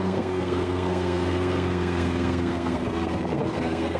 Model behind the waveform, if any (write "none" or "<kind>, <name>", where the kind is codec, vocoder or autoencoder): codec, SNAC